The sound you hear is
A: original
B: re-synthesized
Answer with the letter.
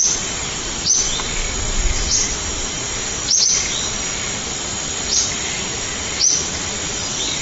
A